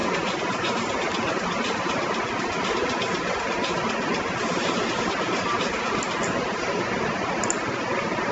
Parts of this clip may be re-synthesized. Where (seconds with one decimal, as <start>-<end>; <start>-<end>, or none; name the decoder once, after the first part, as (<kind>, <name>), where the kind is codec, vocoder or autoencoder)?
none